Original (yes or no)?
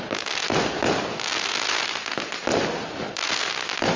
yes